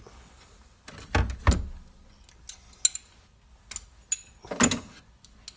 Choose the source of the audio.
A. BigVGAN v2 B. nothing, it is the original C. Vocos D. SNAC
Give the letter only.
B